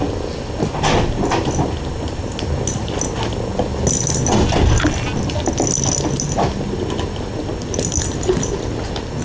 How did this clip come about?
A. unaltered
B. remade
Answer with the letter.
A